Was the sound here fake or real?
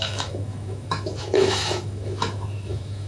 fake